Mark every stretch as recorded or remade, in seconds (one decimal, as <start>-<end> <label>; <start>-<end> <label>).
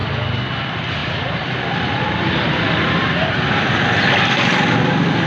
0.0-0.6 recorded; 0.6-5.3 remade